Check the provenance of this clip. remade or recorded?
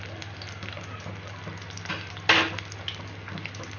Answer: recorded